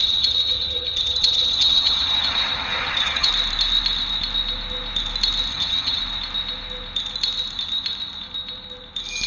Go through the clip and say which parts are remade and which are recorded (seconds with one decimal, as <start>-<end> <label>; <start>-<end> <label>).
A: 0.0-3.3 remade; 3.3-5.5 recorded; 5.5-6.0 remade; 6.0-9.3 recorded